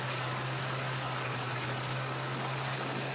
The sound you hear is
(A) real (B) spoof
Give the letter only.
B